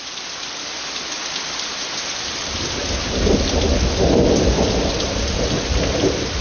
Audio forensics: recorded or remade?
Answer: recorded